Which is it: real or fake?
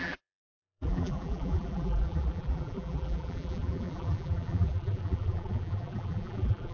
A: fake